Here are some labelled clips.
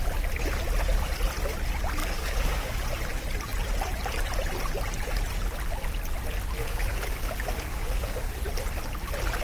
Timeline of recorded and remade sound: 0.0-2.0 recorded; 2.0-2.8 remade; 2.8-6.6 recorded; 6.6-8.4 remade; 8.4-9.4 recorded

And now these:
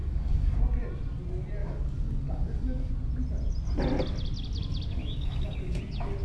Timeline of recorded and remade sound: 0.0-0.6 remade; 0.6-1.6 recorded; 1.6-2.9 remade; 2.9-5.0 recorded; 5.0-5.8 remade; 5.8-6.2 recorded

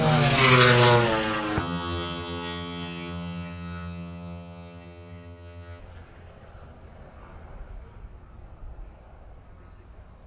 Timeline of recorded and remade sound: 0.0-1.6 recorded; 1.6-5.8 remade; 5.8-10.3 recorded